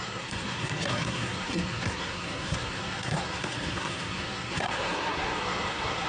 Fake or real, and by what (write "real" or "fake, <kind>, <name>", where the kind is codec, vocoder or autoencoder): fake, codec, SNAC